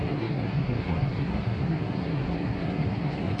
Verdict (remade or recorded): remade